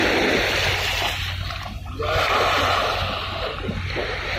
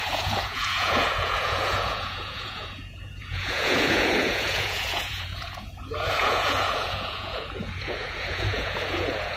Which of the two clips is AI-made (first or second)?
second